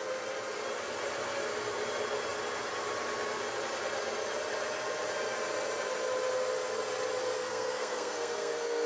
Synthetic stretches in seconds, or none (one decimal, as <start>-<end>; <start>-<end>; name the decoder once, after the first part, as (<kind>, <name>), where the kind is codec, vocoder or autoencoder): 7.4-8.9 (codec, SNAC)